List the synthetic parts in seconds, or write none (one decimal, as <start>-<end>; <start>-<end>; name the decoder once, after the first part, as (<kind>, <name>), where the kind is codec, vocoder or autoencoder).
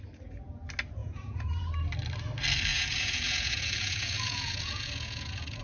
1.0-1.7 (vocoder, Vocos); 2.7-5.6